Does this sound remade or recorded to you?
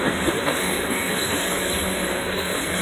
remade